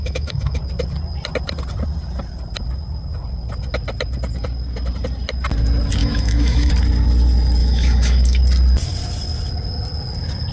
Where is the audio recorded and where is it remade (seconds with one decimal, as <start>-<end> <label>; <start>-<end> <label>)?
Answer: 0.0-0.6 remade; 0.6-6.0 recorded; 6.0-6.7 remade; 6.7-7.6 recorded; 7.6-8.4 remade; 8.4-10.5 recorded